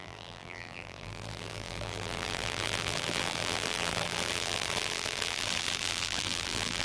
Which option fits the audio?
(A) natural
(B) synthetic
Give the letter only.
B